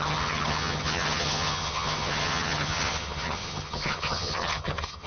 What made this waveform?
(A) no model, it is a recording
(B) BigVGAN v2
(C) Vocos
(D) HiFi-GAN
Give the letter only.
D